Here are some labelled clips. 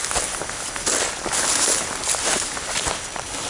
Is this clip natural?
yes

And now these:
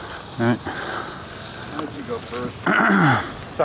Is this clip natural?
yes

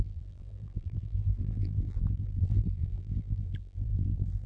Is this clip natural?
no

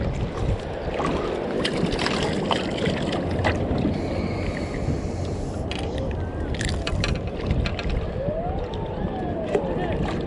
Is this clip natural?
yes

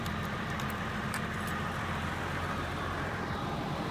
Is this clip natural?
no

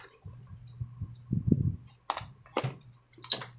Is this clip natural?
yes